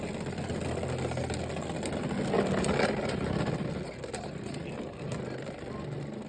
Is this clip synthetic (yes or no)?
no